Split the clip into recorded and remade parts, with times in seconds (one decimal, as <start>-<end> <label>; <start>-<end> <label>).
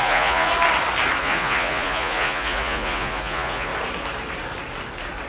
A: 0.0-0.5 remade; 0.5-1.2 recorded; 1.2-3.7 remade; 3.7-5.3 recorded